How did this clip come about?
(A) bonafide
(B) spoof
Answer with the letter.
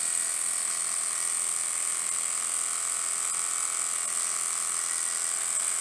A